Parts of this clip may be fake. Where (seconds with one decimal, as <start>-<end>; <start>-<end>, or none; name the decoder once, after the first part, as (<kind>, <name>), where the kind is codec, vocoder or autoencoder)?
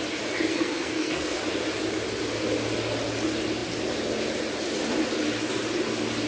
0.5-1.4 (codec, SNAC)